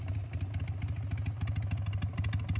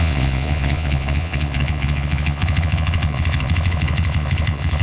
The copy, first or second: second